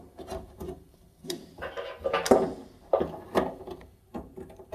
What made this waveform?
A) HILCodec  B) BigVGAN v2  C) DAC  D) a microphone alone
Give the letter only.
B